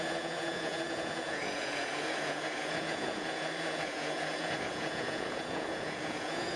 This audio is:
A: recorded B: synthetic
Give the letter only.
B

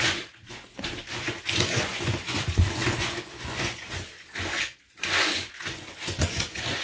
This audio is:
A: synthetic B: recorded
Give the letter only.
A